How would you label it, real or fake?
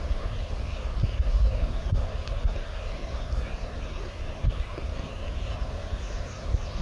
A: fake